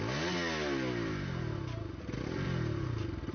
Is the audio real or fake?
real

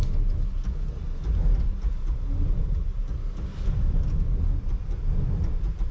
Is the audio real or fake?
real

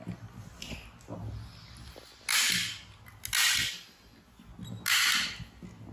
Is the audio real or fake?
real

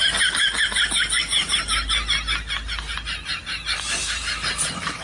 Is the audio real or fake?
real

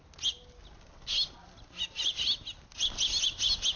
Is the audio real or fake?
real